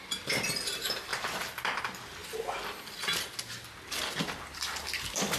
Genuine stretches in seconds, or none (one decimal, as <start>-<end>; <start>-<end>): 0.0-5.4